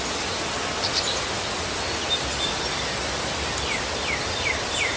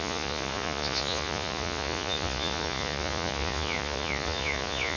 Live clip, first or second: first